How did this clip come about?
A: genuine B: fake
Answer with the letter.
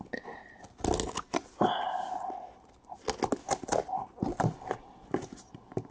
A